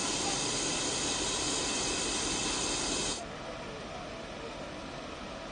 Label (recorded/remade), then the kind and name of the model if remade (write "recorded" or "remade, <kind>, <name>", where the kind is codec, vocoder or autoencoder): recorded